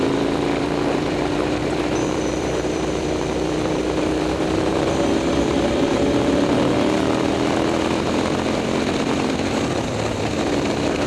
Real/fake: fake